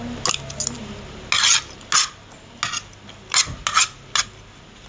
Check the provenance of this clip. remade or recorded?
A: recorded